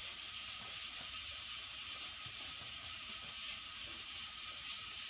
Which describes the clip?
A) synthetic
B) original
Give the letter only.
A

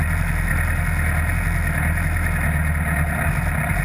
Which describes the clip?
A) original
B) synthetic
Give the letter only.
A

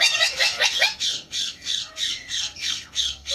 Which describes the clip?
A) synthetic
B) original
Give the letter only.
A